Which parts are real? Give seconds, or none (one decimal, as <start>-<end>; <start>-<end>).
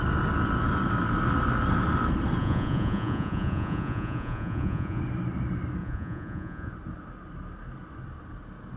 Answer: 0.0-2.4; 5.0-5.8; 6.7-8.8